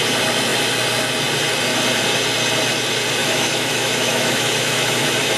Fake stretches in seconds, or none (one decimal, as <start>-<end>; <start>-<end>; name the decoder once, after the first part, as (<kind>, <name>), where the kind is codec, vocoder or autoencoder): 3.2-5.4 (autoencoder, DAC-VAE)